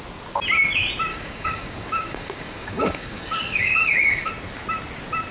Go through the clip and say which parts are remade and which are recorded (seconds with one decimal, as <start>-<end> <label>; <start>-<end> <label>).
0.0-1.1 recorded; 1.1-4.3 remade; 4.3-5.3 recorded

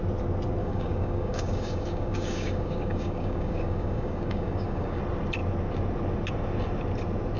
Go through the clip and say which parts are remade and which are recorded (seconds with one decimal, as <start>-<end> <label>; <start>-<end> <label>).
0.0-0.6 recorded; 0.6-5.0 remade; 5.0-7.4 recorded

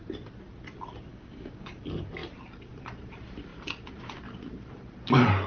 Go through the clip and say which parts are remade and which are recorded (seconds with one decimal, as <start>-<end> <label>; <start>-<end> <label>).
0.0-1.1 recorded; 1.1-1.8 remade; 1.8-5.5 recorded

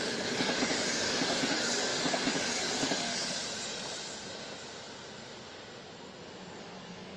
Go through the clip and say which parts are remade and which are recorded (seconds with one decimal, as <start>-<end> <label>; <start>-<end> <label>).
0.0-3.4 remade; 3.4-6.6 recorded; 6.6-7.2 remade

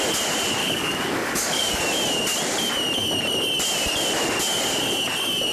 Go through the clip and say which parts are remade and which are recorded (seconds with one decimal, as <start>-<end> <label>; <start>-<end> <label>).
0.0-0.6 recorded; 0.6-1.8 remade; 1.8-5.5 recorded